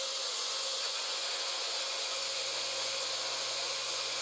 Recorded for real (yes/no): no